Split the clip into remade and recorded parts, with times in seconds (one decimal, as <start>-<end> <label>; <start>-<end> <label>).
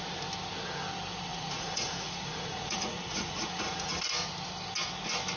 0.0-1.3 recorded; 1.3-4.0 remade; 4.0-5.4 recorded